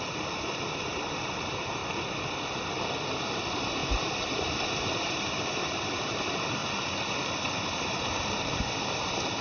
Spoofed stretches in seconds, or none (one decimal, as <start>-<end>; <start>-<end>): 0.0-1.8; 3.2-6.6; 7.5-9.4